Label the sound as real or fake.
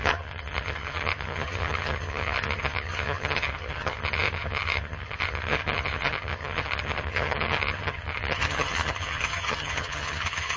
fake